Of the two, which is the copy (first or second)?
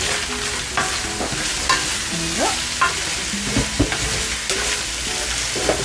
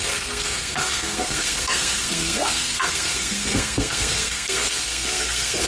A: second